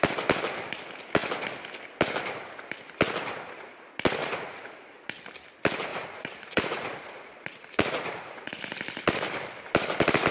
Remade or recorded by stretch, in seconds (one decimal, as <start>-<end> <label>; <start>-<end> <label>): 0.0-4.2 recorded; 4.2-5.2 remade; 5.2-5.9 recorded; 5.9-8.6 remade; 8.6-10.3 recorded